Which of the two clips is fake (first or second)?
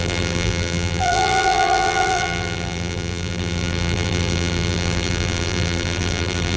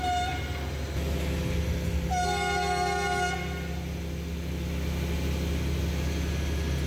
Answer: first